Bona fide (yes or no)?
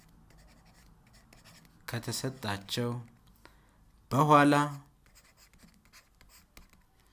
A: yes